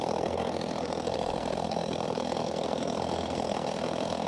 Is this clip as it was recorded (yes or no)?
no